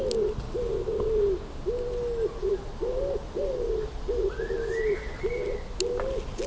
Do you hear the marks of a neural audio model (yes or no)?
no